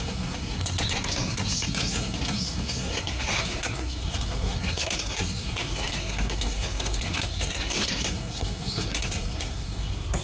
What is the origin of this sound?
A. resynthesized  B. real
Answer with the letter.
A